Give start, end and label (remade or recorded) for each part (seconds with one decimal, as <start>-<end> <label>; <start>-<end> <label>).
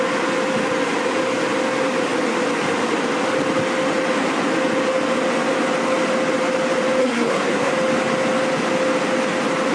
0.0-7.0 recorded; 7.0-7.7 remade; 7.7-9.7 recorded